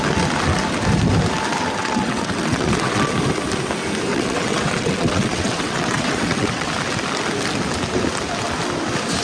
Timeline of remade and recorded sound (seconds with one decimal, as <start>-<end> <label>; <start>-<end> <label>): 0.0-1.8 recorded; 1.8-3.1 remade; 3.1-4.1 recorded; 4.1-6.7 remade; 6.7-9.2 recorded